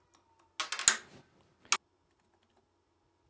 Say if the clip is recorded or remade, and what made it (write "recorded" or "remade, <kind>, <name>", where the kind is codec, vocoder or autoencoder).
recorded